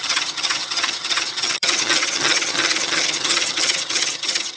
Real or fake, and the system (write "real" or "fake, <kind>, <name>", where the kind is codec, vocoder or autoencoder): fake, vocoder, HiFi-GAN